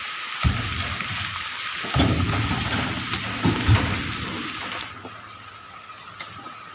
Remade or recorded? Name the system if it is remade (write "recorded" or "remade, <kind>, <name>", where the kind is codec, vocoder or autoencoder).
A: recorded